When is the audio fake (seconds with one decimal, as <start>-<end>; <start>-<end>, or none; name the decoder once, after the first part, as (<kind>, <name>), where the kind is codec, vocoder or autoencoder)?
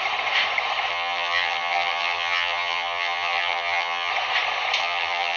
0.9-4.1 (vocoder, HiFi-GAN); 4.8-5.4